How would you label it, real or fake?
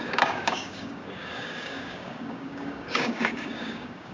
fake